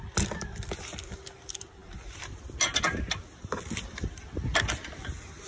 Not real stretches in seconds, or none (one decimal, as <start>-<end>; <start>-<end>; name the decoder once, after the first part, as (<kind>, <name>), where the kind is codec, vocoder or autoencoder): none